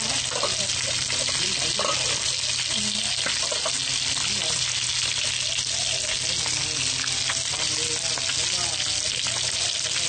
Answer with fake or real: real